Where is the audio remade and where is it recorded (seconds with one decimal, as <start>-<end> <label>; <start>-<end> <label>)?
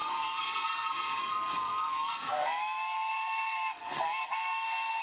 0.0-5.0 remade